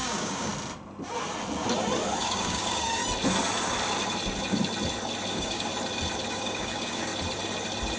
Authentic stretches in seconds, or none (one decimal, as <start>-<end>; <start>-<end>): 0.5-2.2; 3.0-5.3; 5.7-6.3; 7.1-8.0